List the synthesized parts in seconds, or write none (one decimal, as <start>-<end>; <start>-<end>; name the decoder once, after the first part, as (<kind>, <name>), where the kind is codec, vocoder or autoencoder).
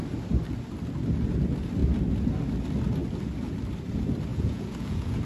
4.3-5.2 (vocoder, Vocos)